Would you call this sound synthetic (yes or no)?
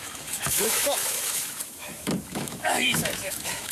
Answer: yes